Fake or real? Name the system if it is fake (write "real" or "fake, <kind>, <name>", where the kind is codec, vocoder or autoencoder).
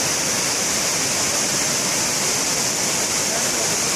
real